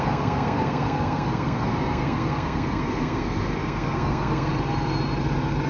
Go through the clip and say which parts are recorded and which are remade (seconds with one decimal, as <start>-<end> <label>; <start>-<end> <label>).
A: 0.0-4.5 remade; 4.5-5.7 recorded